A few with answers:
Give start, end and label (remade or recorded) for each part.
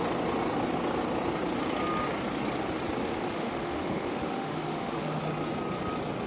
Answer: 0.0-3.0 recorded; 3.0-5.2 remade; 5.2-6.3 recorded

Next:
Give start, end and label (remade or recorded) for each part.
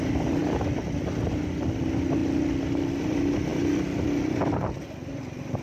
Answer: 0.0-5.6 recorded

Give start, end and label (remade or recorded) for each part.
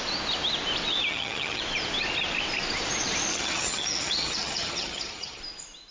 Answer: 0.0-1.1 recorded; 1.1-1.6 remade; 1.6-3.3 recorded; 3.3-5.4 remade; 5.4-5.9 recorded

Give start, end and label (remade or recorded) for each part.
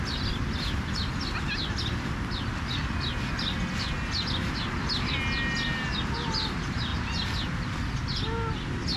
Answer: 0.0-9.0 recorded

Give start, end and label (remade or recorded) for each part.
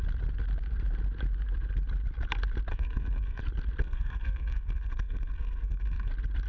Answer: 0.0-2.7 recorded; 2.7-3.4 remade; 3.4-3.8 recorded; 3.8-6.1 remade; 6.1-6.5 recorded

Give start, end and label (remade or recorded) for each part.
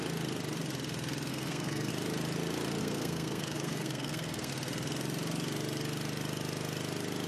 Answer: 0.0-1.3 recorded; 1.3-1.9 remade; 1.9-2.8 recorded; 2.8-4.5 remade; 4.5-7.3 recorded